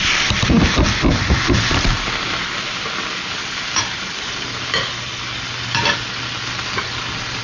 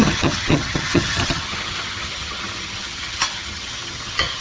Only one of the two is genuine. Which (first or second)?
first